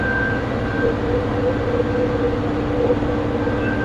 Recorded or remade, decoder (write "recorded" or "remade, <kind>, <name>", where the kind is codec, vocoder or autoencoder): recorded